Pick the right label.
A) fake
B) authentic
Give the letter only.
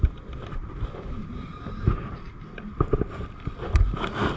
B